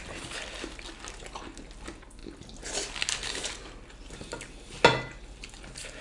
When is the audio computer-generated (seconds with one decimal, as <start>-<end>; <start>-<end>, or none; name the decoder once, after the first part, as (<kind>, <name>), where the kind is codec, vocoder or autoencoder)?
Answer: none

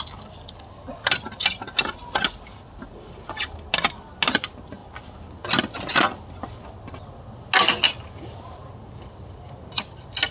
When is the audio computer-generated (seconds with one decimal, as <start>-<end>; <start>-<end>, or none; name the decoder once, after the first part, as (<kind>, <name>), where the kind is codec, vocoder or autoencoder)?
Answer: none

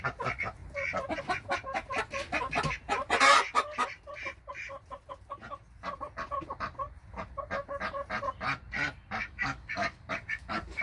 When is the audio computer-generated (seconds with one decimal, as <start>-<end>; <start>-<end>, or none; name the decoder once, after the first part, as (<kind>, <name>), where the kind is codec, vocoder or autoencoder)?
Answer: 9.2-10.8 (codec, DAC)

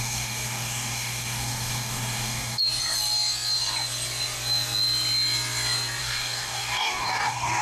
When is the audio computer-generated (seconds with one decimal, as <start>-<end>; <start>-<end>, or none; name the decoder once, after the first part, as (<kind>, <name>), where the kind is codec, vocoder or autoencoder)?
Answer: 0.0-2.6 (codec, DAC); 6.0-7.6